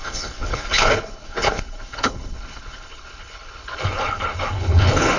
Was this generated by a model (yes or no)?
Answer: yes